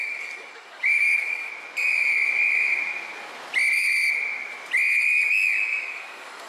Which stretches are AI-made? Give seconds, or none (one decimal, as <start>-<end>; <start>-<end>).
0.0-1.5; 5.7-6.5